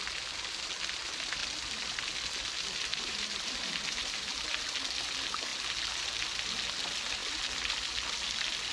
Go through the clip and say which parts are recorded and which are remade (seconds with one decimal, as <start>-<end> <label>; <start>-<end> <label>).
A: 0.0-2.9 recorded; 2.9-4.3 remade; 4.3-8.7 recorded

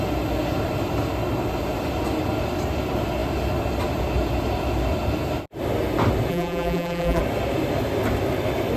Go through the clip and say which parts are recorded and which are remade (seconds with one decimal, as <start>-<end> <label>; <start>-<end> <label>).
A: 0.0-6.3 recorded; 6.3-7.2 remade; 7.2-8.8 recorded

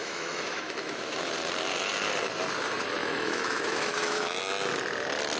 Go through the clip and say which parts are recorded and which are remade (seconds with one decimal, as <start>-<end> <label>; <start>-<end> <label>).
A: 0.0-1.3 remade; 1.3-3.0 recorded; 3.0-4.4 remade; 4.4-5.4 recorded

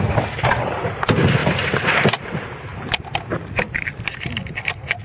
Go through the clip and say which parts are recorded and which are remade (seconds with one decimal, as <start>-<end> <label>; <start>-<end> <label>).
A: 0.0-5.0 recorded

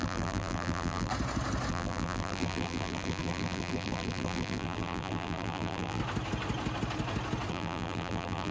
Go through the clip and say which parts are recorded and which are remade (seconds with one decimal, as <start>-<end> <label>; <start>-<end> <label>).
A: 0.0-1.1 remade; 1.1-1.7 recorded; 1.7-6.0 remade; 6.0-7.5 recorded; 7.5-8.5 remade

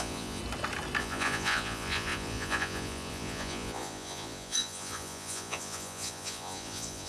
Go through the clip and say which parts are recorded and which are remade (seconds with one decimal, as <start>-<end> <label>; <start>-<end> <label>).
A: 0.0-0.4 remade; 0.4-1.0 recorded; 1.0-7.1 remade

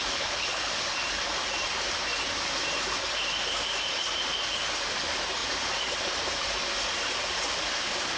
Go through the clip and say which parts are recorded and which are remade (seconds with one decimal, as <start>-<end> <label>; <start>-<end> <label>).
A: 0.0-0.7 remade; 0.7-8.2 recorded